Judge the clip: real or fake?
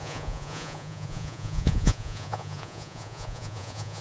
fake